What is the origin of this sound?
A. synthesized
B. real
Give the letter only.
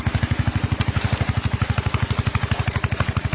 B